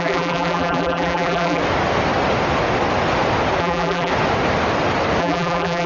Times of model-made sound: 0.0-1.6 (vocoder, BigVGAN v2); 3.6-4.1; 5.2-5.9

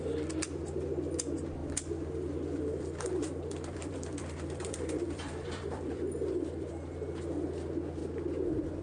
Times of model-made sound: 1.6-6.7 (vocoder, BigVGAN v2)

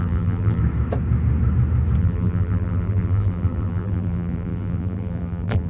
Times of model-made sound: 0.0-0.6 (vocoder, BigVGAN v2); 2.0-5.7

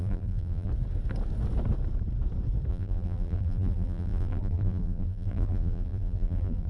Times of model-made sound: 0.0-0.7 (vocoder, BigVGAN v2); 2.7-6.7